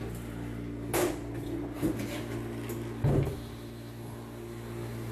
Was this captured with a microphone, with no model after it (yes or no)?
yes